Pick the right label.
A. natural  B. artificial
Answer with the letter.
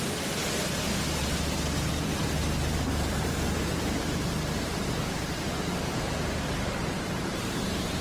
B